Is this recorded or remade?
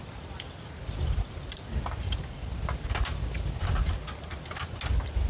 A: recorded